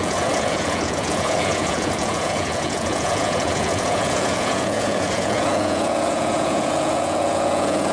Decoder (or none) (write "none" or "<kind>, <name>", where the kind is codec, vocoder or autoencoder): vocoder, Vocos